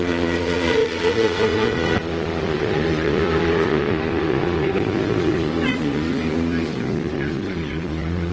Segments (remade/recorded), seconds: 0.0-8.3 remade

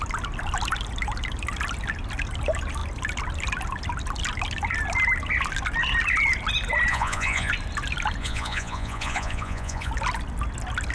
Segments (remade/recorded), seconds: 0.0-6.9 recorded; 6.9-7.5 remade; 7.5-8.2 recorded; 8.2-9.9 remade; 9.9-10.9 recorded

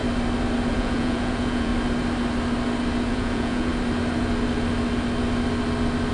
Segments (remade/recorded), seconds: 0.0-0.7 recorded; 0.7-1.7 remade; 1.7-3.1 recorded; 3.1-3.7 remade; 3.7-6.1 recorded

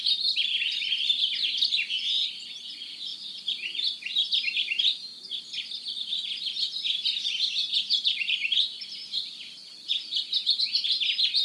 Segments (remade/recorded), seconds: 0.0-11.4 recorded

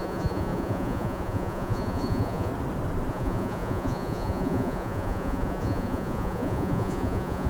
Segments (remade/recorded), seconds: 0.0-2.5 remade; 2.5-3.1 recorded; 3.1-7.5 remade